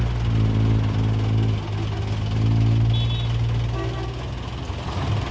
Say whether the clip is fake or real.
real